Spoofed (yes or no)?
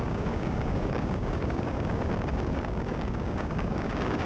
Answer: yes